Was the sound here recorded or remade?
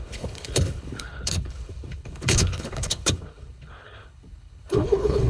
remade